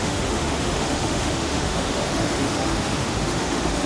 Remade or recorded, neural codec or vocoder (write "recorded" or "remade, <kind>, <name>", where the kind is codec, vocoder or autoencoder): remade, autoencoder, DAC-VAE